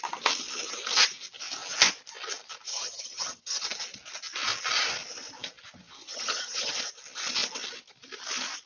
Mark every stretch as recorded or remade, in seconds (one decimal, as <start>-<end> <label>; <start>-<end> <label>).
0.0-2.7 recorded; 2.7-3.6 remade; 3.6-6.0 recorded; 6.0-6.7 remade; 6.7-8.7 recorded